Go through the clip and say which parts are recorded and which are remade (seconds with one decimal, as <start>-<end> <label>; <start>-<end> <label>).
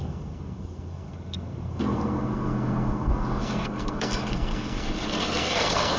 0.0-6.0 remade